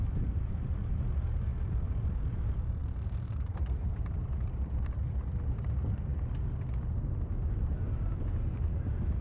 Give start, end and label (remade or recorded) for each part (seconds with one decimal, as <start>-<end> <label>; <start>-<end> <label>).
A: 0.0-6.1 remade; 6.1-7.5 recorded; 7.5-9.2 remade